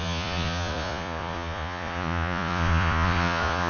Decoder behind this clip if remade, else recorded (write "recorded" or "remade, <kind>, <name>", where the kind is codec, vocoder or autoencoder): remade, vocoder, Vocos